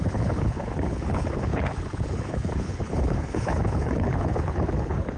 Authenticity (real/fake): fake